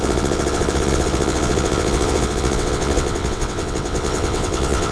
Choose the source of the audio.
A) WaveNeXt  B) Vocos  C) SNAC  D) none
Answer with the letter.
A